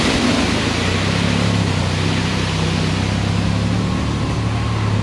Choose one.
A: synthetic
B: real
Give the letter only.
B